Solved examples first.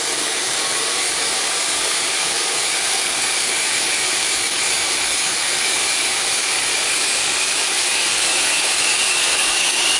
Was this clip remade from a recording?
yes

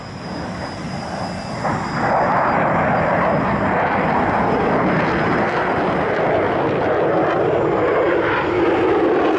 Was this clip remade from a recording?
no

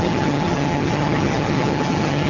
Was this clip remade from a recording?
yes